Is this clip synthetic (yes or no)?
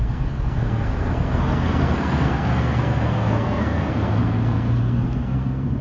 yes